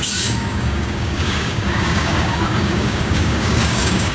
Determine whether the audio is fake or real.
fake